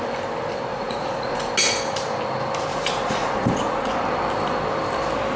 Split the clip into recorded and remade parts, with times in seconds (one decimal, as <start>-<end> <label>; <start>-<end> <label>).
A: 0.0-0.7 recorded; 0.7-1.5 remade; 1.5-2.7 recorded; 2.7-3.9 remade; 3.9-5.4 recorded